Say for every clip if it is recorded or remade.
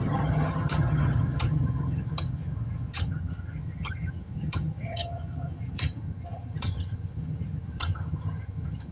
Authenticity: remade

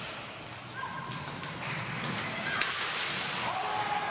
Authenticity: recorded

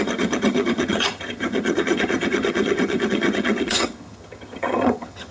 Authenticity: remade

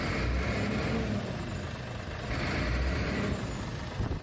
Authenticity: recorded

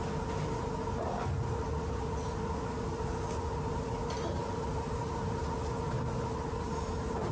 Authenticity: recorded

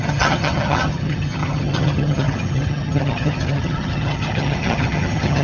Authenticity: remade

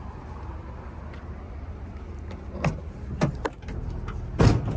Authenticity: recorded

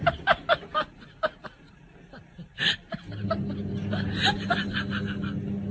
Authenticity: recorded